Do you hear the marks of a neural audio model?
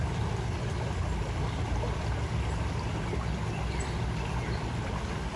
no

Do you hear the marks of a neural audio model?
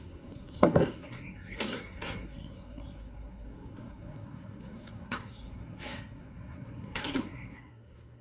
yes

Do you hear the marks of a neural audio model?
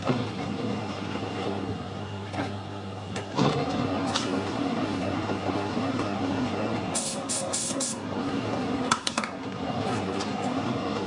yes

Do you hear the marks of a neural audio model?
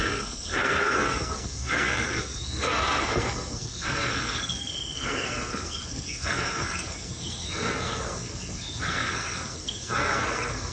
yes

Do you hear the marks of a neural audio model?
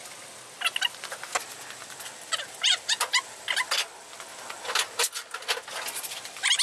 no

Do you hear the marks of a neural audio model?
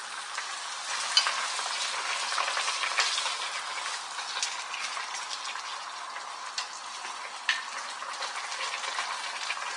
no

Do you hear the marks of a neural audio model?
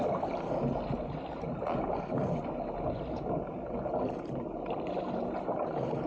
no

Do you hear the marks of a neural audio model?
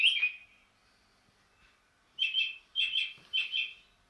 no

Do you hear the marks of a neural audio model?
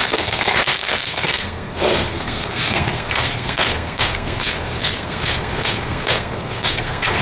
yes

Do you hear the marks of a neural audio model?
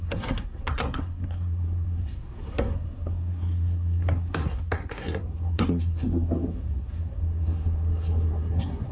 yes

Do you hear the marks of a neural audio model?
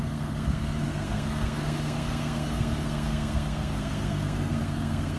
yes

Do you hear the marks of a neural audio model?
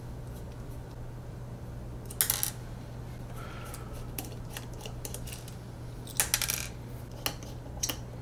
no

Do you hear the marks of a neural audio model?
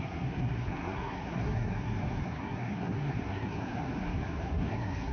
yes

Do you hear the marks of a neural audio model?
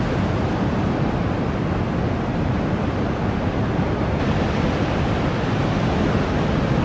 no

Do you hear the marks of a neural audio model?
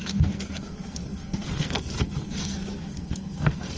yes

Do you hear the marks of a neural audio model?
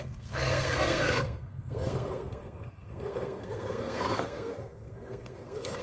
yes